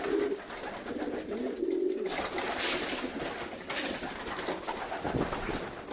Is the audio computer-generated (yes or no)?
no